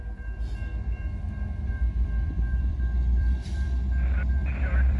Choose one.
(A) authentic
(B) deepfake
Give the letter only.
B